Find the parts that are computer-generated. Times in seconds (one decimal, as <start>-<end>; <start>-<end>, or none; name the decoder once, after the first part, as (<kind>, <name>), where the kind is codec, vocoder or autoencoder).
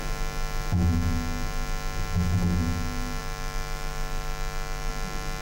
3.2-4.9 (autoencoder, DAC-VAE)